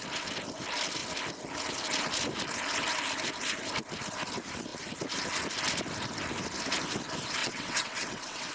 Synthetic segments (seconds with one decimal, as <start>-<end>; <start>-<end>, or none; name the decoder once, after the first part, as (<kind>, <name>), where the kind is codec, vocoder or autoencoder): 7.4-8.5 (vocoder, WaveNeXt)